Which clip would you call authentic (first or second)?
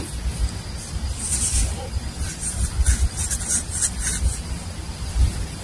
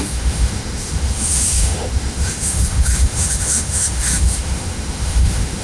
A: first